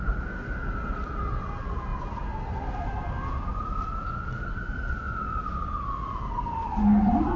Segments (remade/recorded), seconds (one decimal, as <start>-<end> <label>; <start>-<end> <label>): 0.0-7.4 recorded